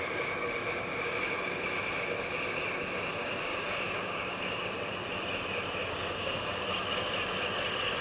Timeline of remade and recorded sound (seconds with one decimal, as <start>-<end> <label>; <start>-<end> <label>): 0.0-3.5 recorded; 3.5-4.4 remade; 4.4-5.8 recorded; 5.8-6.6 remade; 6.6-8.0 recorded